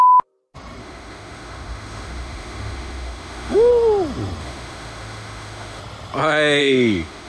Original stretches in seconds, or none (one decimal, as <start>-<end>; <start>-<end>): 0.0-0.8; 3.7-4.4; 5.8-6.6